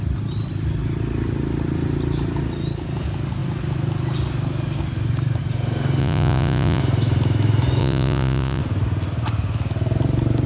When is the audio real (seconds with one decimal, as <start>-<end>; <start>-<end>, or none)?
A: 0.0-6.0; 6.8-7.8; 8.6-10.5